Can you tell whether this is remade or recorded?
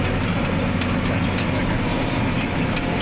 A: recorded